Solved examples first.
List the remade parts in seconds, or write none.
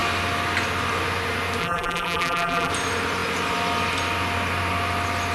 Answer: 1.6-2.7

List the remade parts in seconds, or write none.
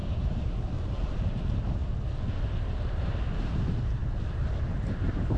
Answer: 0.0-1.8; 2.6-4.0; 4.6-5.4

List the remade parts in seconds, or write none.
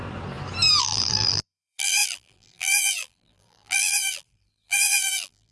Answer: 0.8-5.5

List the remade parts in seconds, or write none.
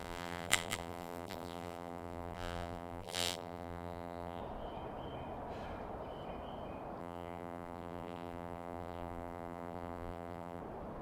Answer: 0.0-4.4; 7.0-10.6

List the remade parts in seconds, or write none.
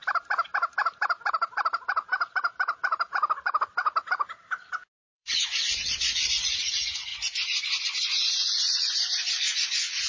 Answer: 0.7-10.1